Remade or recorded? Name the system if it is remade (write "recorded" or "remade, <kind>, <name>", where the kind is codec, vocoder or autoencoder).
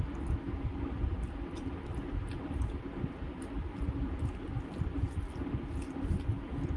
recorded